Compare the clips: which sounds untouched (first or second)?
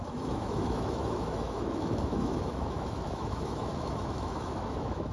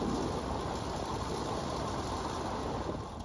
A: second